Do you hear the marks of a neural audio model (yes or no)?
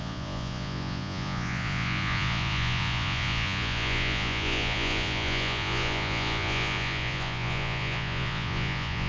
yes